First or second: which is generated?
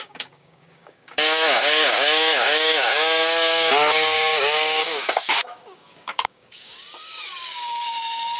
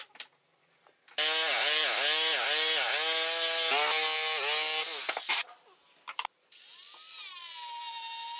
first